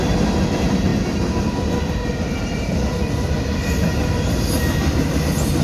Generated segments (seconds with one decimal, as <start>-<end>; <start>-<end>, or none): none